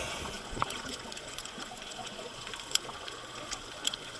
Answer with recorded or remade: remade